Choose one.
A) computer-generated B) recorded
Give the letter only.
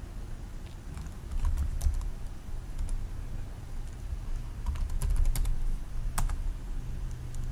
B